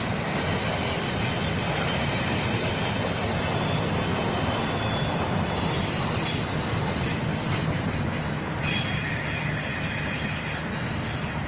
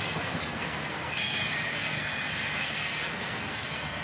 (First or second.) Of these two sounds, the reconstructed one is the second